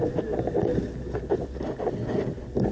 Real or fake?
real